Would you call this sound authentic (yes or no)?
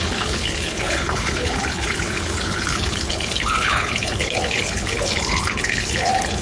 no